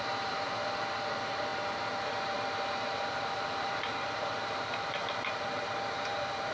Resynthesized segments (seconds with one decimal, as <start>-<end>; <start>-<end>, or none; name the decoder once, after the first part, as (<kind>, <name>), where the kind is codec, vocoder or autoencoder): 0.0-6.5 (vocoder, BigVGAN v2)